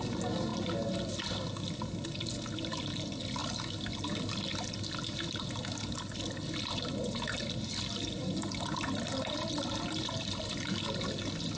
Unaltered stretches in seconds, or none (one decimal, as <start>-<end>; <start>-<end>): 0.0-11.6